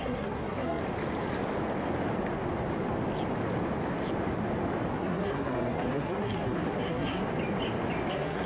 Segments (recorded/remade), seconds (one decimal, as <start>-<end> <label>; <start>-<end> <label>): 0.0-0.8 remade; 0.8-4.9 recorded; 4.9-7.2 remade; 7.2-8.1 recorded; 8.1-8.5 remade